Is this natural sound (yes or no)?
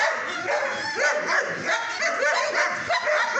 yes